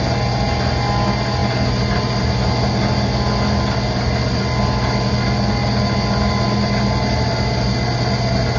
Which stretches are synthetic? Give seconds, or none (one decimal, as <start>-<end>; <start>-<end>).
none